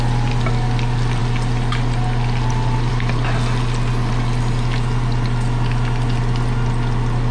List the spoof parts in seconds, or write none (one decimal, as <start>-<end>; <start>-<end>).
none